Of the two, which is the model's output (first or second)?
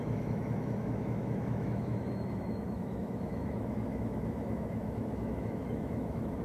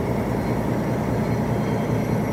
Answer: first